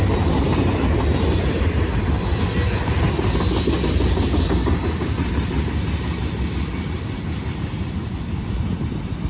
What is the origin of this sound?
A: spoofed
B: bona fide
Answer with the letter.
B